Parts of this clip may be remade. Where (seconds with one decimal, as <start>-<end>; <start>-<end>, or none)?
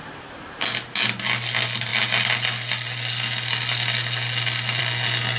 none